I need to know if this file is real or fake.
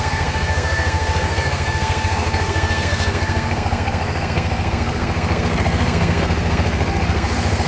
fake